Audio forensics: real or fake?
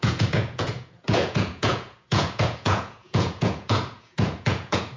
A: fake